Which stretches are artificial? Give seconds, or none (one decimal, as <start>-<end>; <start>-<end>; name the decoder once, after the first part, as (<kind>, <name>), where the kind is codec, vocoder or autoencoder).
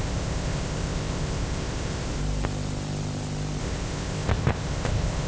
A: 0.0-2.2 (codec, ZipCodec); 3.6-5.3